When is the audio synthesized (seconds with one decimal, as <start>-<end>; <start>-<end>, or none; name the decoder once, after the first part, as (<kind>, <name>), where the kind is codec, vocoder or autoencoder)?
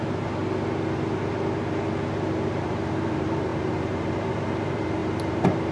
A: 0.0-0.4 (vocoder, BigVGAN v2); 2.6-5.7